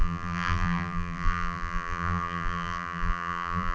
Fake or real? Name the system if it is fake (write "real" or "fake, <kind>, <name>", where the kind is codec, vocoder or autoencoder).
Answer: fake, vocoder, BigVGAN v2